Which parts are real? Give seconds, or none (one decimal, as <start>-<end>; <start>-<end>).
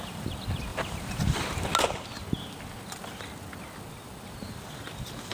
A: 0.0-5.3